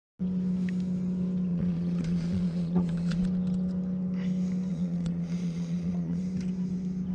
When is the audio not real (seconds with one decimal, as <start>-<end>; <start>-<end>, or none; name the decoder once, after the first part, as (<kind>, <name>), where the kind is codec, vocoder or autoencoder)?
1.5-3.2 (vocoder, Vocos); 4.7-6.2